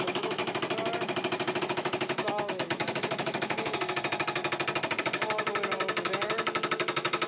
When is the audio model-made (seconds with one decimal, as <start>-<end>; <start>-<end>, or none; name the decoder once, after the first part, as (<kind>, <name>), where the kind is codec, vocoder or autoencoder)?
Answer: 0.0-0.4 (autoencoder, DAC-VAE); 1.6-4.4; 5.0-7.3